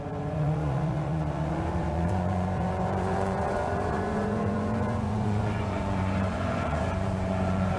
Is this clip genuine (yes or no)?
no